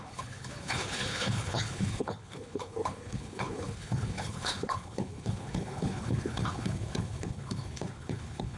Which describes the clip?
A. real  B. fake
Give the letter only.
B